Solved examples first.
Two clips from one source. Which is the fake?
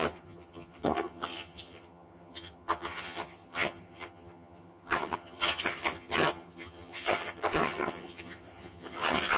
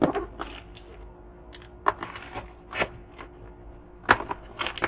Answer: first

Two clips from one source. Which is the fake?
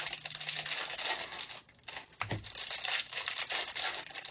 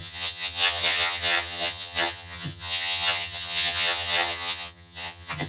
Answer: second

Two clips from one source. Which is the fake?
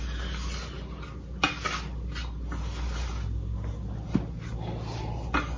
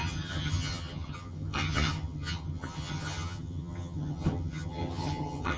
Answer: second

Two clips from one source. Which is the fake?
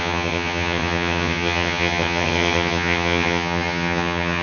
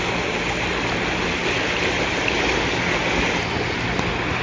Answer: first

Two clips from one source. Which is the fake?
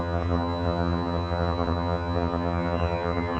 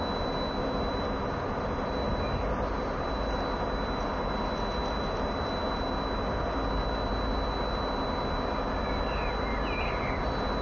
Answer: first